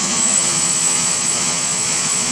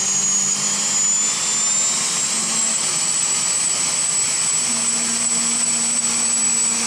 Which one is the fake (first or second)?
first